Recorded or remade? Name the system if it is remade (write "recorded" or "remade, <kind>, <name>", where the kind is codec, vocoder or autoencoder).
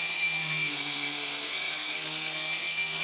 remade, codec, SNAC